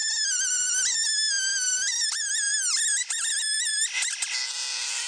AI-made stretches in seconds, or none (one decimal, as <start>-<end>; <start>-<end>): none